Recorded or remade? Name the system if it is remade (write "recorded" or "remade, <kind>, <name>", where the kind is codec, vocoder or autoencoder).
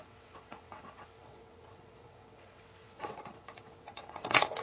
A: remade, vocoder, WaveNeXt